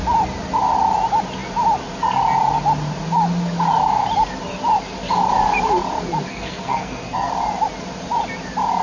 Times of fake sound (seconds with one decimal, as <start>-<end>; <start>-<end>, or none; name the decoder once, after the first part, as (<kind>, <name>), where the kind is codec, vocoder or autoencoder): 6.3-7.3 (codec, SNAC)